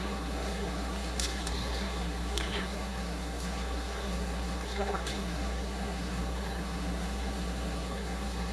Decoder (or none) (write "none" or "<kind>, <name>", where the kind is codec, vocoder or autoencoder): codec, SNAC